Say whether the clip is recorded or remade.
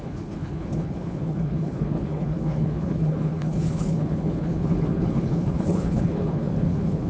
remade